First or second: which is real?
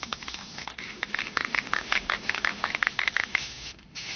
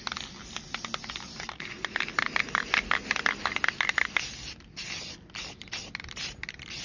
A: second